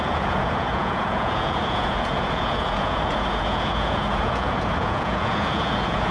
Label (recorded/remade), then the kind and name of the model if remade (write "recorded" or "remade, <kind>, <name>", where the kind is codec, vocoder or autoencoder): remade, vocoder, Vocos